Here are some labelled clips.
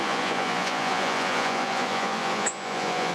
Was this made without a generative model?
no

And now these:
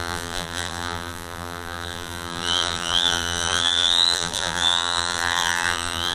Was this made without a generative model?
no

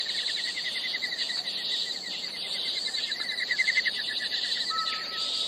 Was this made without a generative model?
no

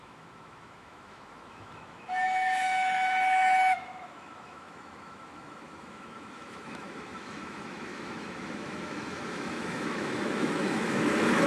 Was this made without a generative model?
no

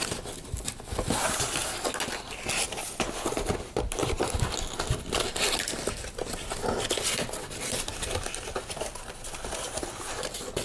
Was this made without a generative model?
yes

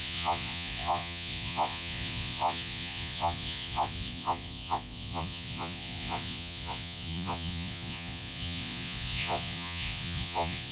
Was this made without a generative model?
no